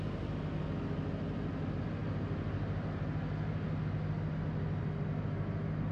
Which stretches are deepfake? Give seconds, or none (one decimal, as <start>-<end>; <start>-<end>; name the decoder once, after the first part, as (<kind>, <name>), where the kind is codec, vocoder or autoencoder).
none

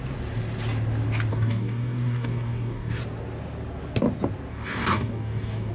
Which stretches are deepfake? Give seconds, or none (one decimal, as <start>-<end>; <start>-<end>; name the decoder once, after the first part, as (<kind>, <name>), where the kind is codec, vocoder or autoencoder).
1.3-3.0 (codec, DAC); 4.5-5.7